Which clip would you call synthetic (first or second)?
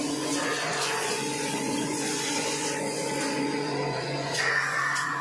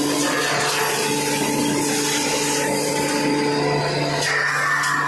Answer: first